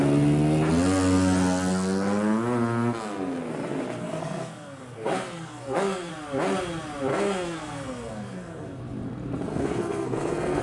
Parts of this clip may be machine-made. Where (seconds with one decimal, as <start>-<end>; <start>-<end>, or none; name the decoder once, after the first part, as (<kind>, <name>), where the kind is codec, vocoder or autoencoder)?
4.0-6.1 (codec, SNAC); 7.1-8.8; 9.5-10.6